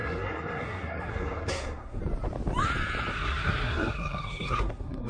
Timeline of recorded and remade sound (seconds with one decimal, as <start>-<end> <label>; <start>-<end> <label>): 0.0-2.0 remade; 2.0-3.1 recorded; 3.1-5.1 remade